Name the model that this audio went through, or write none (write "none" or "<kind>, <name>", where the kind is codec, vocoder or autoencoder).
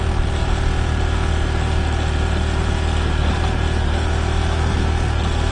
none